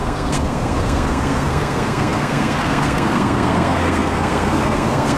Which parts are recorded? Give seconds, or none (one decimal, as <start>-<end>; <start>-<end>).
none